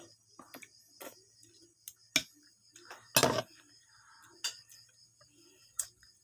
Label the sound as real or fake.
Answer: real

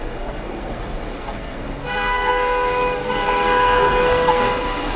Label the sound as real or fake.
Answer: fake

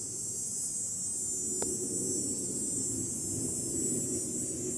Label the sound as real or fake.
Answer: real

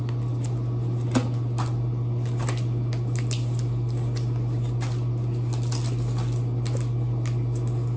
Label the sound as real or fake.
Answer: real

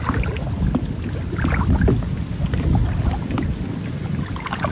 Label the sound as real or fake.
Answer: real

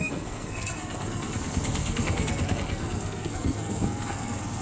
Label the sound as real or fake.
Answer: fake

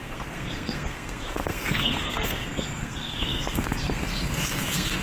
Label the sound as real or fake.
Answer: fake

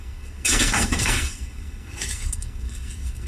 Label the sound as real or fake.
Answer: fake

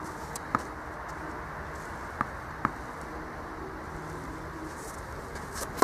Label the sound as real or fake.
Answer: real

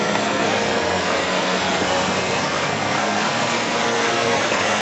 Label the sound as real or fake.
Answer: fake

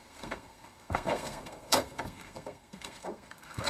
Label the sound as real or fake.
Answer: fake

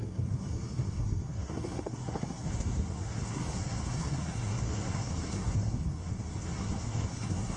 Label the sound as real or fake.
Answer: fake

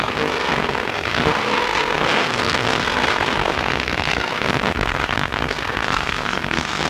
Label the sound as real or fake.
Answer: fake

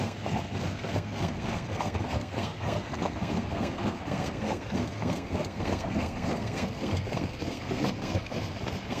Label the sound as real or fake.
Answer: fake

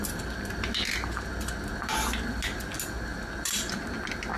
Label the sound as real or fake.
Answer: real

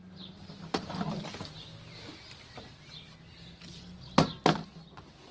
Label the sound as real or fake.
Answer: real